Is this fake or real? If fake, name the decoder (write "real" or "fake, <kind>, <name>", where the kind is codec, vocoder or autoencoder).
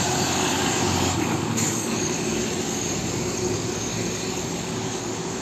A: fake, codec, DAC